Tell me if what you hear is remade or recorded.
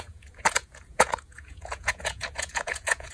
remade